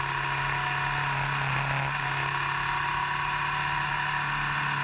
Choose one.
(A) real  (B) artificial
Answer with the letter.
A